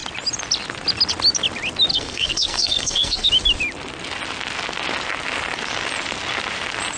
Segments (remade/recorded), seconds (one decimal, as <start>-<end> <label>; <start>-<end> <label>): 0.0-1.9 recorded; 1.9-3.3 remade; 3.3-7.0 recorded